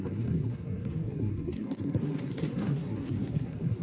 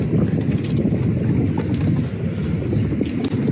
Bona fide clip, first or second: second